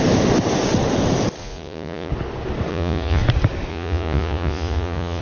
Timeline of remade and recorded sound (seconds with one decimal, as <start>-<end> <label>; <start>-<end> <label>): 0.0-1.4 recorded; 1.4-2.1 remade; 2.1-2.7 recorded; 2.7-3.2 remade; 3.2-3.7 recorded; 3.7-5.2 remade